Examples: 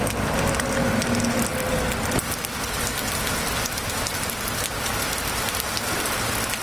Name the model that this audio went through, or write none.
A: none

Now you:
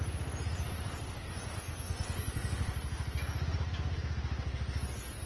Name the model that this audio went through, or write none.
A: none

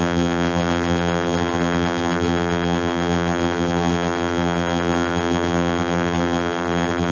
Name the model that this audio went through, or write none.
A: vocoder, BigVGAN v2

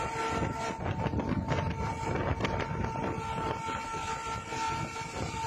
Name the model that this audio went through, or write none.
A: none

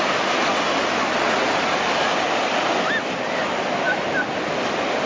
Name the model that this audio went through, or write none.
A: none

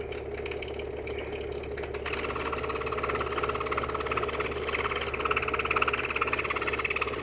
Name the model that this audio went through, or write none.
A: none